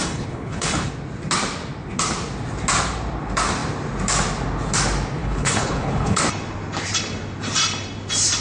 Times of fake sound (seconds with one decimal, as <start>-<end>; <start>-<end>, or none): 0.0-0.9; 5.2-6.2